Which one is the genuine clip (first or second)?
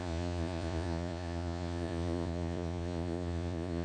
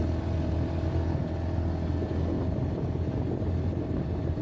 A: second